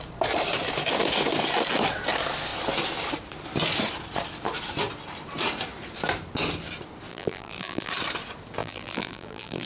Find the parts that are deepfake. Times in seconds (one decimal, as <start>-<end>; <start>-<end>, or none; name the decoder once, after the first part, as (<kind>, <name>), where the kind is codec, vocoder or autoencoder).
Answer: 7.1-7.9 (vocoder, BigVGAN v2); 8.6-9.7